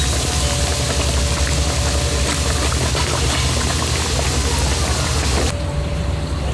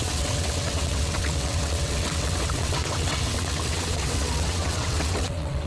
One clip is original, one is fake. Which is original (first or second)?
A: first